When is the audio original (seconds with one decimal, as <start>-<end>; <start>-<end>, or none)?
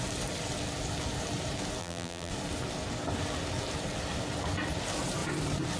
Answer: 0.0-1.8; 2.3-5.8